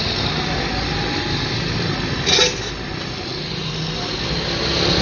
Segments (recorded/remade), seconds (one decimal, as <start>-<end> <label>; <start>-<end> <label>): 0.0-5.0 recorded